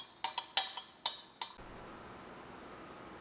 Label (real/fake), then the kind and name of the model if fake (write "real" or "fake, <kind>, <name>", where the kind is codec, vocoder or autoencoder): real